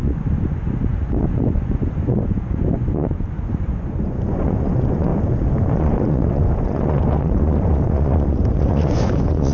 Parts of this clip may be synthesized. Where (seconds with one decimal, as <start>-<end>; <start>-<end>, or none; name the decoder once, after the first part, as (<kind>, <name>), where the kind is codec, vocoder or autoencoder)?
0.0-5.1 (vocoder, Vocos); 5.7-9.5